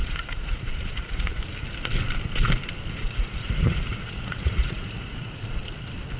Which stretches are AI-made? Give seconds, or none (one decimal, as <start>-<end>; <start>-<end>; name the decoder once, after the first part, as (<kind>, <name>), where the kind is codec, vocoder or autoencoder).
0.0-1.4 (vocoder, Vocos); 3.0-5.6